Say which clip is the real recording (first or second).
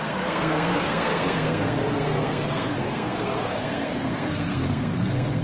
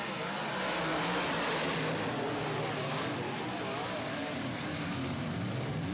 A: second